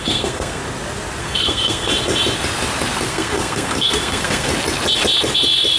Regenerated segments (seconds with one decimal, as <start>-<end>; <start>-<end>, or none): 0.0-0.6; 1.2-1.9; 3.1-4.5